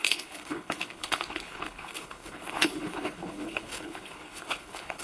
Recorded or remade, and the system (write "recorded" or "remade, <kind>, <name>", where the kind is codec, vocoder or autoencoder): remade, codec, HILCodec